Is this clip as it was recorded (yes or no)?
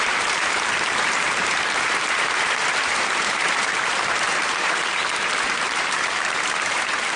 no